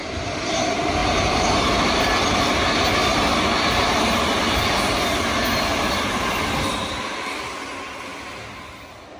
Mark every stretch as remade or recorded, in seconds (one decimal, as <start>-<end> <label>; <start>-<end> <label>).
0.0-0.6 remade; 0.6-1.0 recorded; 1.0-2.0 remade; 2.0-9.2 recorded